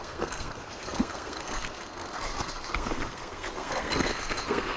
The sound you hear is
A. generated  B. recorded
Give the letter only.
A